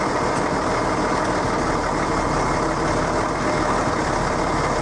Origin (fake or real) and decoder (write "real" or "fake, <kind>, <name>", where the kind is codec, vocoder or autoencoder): real